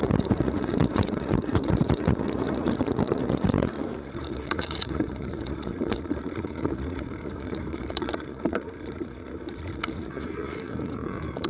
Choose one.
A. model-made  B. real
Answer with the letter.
A